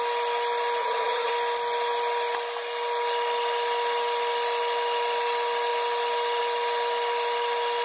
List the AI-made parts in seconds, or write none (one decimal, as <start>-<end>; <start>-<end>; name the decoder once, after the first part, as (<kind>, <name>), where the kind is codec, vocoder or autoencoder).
0.8-1.3 (vocoder, HiFi-GAN)